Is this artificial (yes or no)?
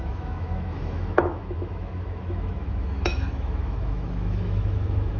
yes